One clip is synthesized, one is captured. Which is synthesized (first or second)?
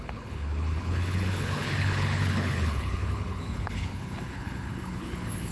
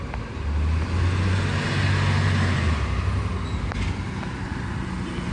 first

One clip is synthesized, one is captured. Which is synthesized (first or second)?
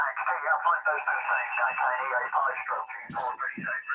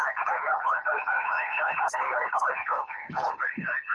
second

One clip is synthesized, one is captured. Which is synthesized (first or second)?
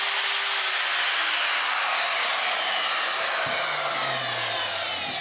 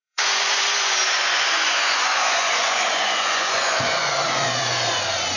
second